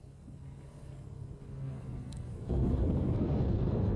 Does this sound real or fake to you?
fake